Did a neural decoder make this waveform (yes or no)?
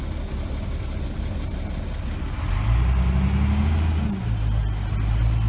no